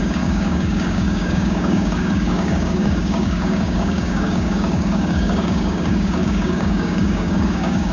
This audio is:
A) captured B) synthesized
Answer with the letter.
B